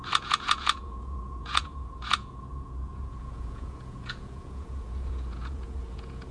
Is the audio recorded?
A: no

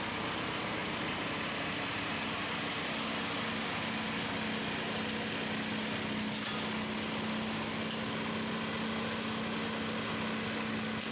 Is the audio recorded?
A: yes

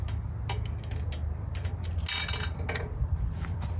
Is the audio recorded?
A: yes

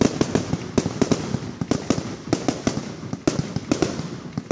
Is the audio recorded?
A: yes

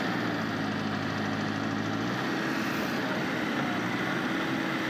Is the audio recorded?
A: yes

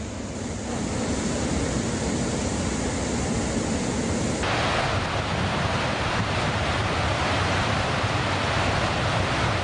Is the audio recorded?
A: yes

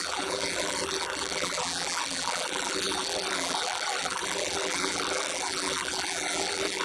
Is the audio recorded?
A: no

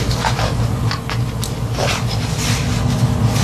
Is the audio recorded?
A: yes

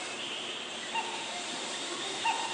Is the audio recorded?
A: no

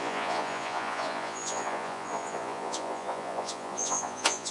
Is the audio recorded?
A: no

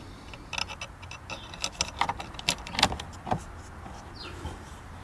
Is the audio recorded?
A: yes